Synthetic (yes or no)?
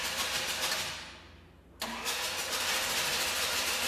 no